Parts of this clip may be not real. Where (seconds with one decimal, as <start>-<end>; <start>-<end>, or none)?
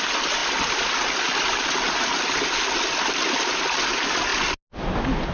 none